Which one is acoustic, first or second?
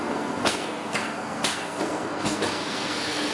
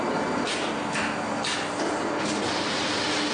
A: second